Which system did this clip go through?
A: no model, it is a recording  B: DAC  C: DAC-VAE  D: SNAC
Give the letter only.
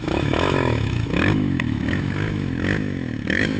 C